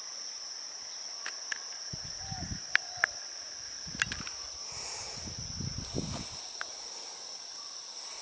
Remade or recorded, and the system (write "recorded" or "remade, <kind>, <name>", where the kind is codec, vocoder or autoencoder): recorded